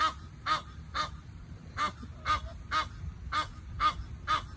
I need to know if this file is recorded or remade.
recorded